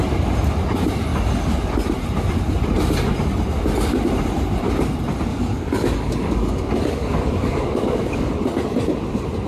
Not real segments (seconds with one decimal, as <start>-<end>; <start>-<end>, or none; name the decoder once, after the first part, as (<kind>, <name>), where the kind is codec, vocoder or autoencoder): 5.3-8.3 (codec, DAC)